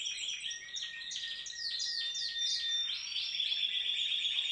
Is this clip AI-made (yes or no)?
no